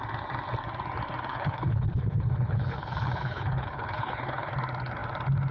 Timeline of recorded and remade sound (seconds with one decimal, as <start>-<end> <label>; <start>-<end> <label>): 0.0-1.3 recorded; 1.3-4.5 remade; 4.5-5.5 recorded